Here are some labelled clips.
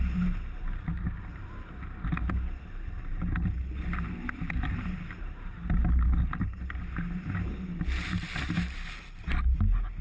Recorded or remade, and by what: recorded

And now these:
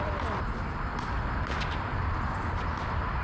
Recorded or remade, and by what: recorded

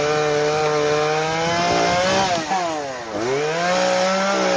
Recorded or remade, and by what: recorded